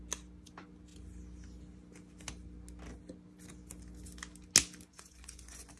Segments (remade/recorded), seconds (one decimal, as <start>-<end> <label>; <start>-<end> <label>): 0.0-4.9 recorded; 4.9-5.8 remade